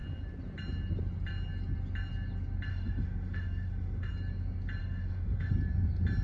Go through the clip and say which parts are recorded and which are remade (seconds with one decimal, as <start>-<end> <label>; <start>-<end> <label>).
0.0-2.7 recorded; 2.7-4.1 remade; 4.1-4.8 recorded; 4.8-5.5 remade; 5.5-6.2 recorded